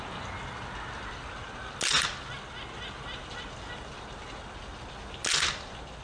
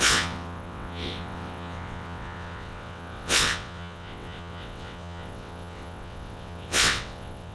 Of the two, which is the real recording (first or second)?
first